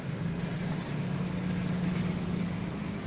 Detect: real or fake real